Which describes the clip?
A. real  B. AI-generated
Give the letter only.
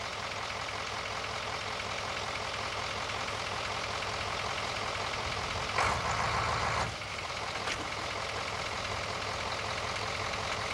A